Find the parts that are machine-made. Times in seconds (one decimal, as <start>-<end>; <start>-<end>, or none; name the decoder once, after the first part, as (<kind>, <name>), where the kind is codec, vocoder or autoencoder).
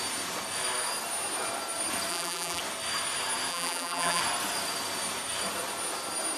2.1-2.6 (vocoder, BigVGAN v2); 3.5-4.2